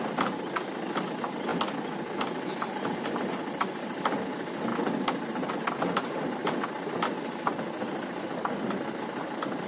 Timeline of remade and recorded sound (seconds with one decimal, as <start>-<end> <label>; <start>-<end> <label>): 0.0-9.7 recorded